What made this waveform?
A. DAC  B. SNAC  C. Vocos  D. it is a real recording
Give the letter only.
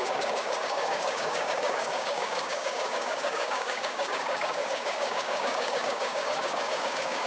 A